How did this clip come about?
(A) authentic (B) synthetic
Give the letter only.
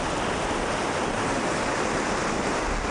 A